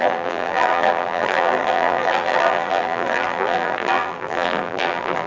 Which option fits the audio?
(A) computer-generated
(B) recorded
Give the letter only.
A